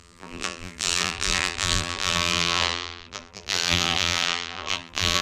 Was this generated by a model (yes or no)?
yes